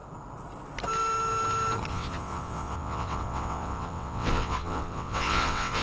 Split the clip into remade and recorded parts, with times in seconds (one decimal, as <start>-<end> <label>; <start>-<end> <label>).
0.0-1.9 recorded; 1.9-5.8 remade